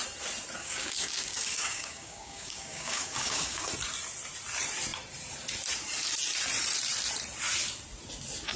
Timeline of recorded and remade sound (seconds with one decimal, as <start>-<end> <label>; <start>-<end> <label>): 0.0-0.6 recorded; 0.6-3.7 remade; 3.7-8.6 recorded